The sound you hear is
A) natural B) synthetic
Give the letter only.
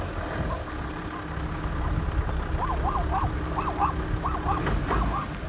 A